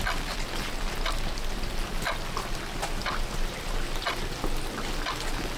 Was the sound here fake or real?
real